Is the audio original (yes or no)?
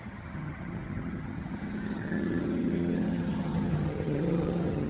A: no